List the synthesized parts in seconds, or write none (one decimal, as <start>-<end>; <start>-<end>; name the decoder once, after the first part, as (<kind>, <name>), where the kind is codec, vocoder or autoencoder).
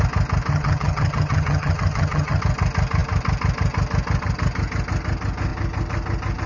0.5-2.4 (vocoder, HiFi-GAN)